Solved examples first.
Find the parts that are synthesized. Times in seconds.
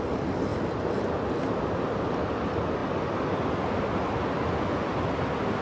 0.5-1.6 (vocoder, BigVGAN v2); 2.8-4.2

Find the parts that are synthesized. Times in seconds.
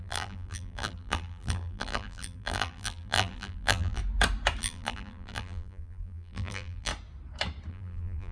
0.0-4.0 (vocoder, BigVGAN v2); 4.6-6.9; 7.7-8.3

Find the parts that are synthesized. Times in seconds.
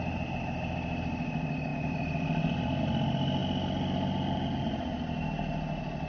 1.7-2.8 (vocoder, BigVGAN v2)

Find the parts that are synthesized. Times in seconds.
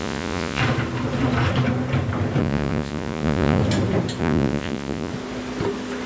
0.0-0.6 (vocoder, Vocos); 2.4-3.6; 4.2-5.1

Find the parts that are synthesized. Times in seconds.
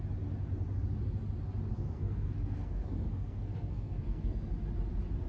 1.7-4.5 (codec, SNAC)